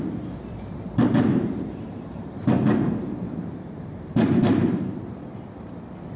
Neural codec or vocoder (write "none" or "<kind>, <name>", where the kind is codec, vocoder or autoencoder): vocoder, BigVGAN v2